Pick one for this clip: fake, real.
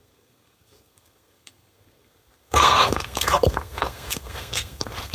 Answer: fake